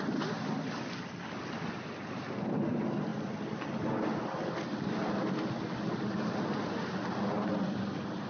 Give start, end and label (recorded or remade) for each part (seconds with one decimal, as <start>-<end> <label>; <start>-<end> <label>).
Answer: 0.0-8.3 recorded